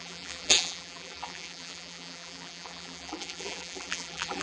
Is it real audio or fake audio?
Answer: fake